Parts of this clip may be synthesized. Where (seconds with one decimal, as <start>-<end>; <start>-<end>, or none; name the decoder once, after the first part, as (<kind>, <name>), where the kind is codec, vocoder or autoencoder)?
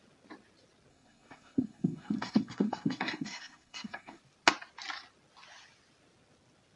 0.9-4.2 (codec, SNAC)